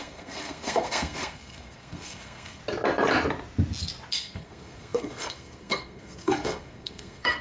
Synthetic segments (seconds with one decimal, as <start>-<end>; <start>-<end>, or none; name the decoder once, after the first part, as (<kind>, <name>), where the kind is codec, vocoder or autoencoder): 0.0-2.6 (codec, SNAC); 4.1-7.4